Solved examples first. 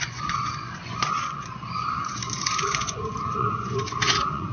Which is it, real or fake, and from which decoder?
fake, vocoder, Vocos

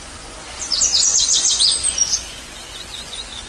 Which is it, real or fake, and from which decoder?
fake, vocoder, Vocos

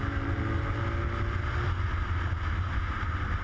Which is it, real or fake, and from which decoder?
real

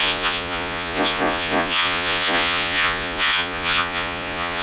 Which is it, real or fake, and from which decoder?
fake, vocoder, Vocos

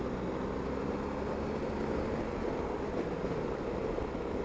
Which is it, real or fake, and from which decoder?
real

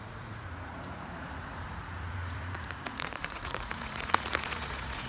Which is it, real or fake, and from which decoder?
fake, vocoder, Vocos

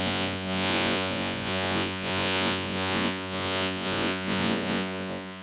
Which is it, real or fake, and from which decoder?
fake, vocoder, Vocos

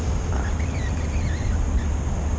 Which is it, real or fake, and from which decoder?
real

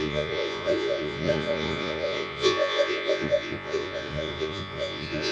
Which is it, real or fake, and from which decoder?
fake, vocoder, Vocos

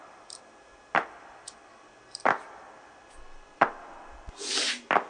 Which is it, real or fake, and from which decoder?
real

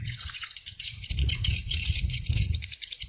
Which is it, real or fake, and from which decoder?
fake, vocoder, Vocos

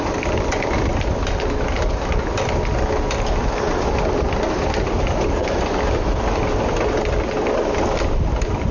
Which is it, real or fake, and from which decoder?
real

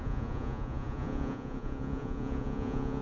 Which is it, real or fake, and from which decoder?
fake, vocoder, Vocos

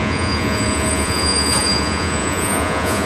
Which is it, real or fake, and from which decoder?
fake, vocoder, Vocos